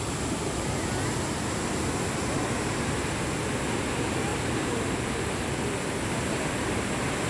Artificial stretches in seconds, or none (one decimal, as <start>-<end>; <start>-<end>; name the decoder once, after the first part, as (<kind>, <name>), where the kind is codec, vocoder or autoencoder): none